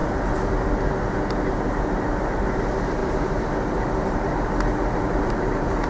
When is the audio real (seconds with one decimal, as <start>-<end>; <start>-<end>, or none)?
0.0-1.9; 4.3-5.2